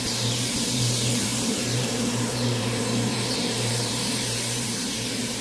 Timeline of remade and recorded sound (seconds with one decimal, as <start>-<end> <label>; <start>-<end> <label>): 0.0-5.4 remade